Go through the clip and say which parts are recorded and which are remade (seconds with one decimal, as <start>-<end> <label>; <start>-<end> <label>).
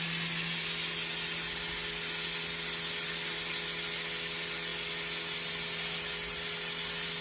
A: 0.0-7.2 recorded